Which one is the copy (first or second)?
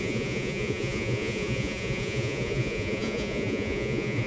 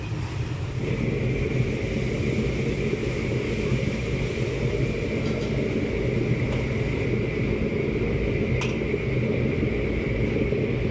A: first